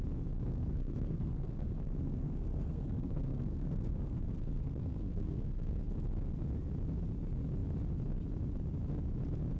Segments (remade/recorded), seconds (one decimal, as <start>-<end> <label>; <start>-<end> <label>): 0.0-0.5 recorded; 0.5-5.8 remade; 5.8-9.6 recorded